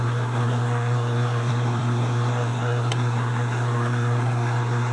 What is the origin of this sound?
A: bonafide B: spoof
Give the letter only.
B